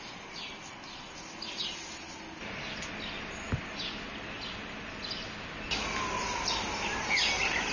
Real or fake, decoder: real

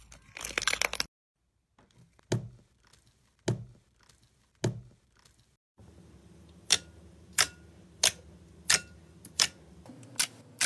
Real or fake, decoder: real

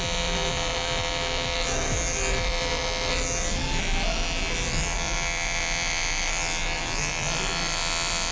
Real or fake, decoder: real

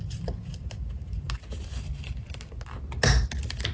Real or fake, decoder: real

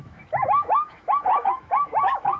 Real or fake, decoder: fake, autoencoder, DAC-VAE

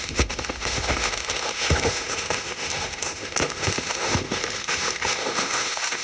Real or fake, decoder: fake, autoencoder, DAC-VAE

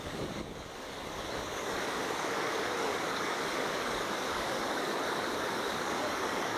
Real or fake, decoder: fake, codec, DAC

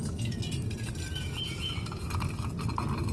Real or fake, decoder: real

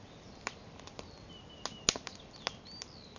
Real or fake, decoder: real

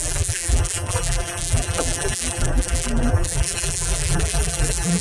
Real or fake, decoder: fake, vocoder, BigVGAN v2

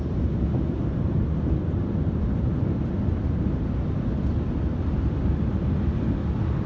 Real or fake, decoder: real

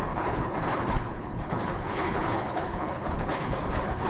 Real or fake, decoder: fake, codec, HILCodec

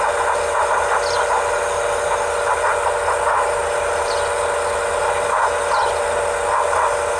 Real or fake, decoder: real